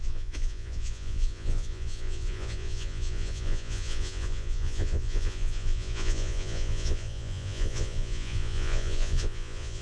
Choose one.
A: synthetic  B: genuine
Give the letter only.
A